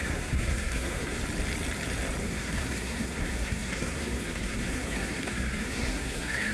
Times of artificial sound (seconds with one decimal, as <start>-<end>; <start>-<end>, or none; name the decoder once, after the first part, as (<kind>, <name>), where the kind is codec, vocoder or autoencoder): 0.0-1.2 (codec, SNAC); 2.2-6.5